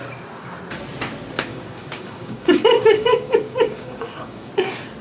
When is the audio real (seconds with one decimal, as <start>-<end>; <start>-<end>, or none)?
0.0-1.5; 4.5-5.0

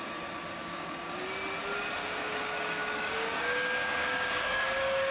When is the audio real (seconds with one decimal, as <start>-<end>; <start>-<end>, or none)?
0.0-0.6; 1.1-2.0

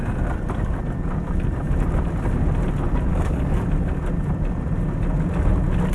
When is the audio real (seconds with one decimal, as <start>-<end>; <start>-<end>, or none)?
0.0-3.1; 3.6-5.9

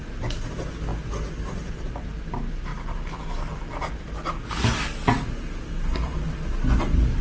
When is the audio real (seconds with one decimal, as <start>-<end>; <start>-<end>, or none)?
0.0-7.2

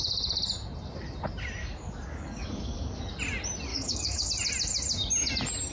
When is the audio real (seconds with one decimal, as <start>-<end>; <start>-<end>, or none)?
0.0-1.6; 3.0-3.7; 4.3-5.7

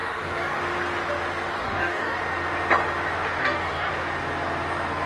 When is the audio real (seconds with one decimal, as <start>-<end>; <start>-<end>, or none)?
0.6-1.5; 2.2-3.4; 3.9-5.1

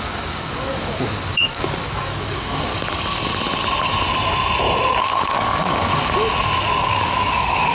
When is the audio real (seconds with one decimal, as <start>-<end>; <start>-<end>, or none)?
2.7-5.0; 5.9-6.8

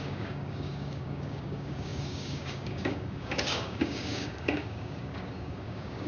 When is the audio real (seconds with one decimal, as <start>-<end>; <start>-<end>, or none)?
none